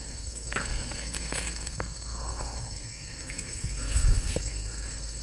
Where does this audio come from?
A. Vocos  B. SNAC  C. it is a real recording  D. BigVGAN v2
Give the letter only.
B